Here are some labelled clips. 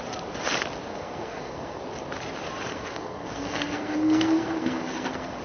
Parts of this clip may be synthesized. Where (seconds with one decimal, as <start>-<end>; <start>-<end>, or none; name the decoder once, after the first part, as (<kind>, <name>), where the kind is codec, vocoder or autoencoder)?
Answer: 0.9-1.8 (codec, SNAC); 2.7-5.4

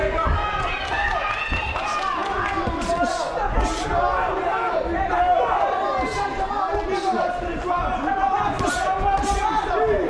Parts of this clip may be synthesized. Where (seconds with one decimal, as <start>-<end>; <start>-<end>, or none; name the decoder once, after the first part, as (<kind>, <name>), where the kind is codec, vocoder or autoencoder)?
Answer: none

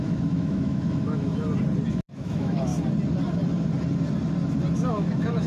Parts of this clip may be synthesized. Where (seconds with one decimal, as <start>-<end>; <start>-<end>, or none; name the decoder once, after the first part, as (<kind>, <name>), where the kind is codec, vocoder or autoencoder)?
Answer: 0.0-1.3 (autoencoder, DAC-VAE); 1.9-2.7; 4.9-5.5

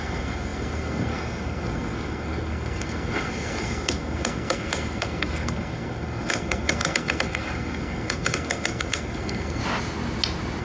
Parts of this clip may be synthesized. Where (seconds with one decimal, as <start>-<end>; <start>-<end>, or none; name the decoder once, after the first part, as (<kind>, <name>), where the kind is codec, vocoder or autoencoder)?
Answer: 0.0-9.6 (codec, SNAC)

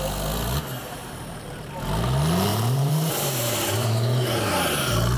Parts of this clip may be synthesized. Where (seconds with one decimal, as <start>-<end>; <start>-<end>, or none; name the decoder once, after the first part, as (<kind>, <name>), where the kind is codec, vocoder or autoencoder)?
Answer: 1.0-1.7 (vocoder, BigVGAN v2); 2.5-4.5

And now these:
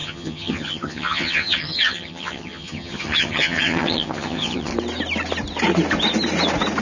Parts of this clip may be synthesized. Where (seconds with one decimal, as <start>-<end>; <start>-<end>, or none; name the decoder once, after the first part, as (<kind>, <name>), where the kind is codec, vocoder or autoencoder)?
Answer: 0.0-4.7 (vocoder, HiFi-GAN)

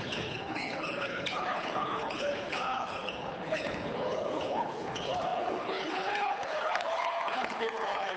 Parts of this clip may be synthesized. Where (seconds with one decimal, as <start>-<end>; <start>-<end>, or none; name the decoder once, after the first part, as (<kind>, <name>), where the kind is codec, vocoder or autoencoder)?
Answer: 0.0-8.2 (codec, HILCodec)